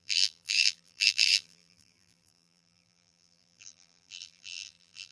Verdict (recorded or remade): remade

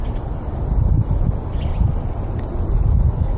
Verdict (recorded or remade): recorded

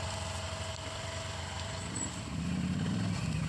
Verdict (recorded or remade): remade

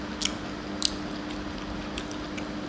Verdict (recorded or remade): recorded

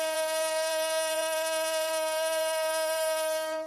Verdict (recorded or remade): remade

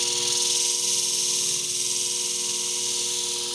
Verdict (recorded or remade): recorded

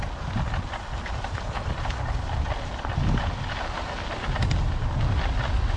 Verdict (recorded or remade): recorded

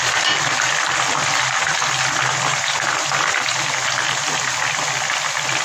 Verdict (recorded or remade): recorded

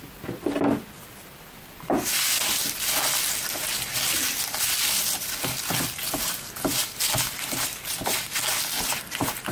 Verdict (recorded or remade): recorded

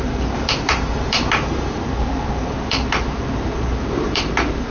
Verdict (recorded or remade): remade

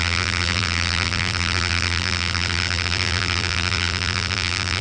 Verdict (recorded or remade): remade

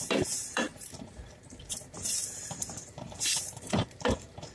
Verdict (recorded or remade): remade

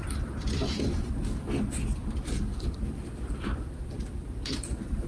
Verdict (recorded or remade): remade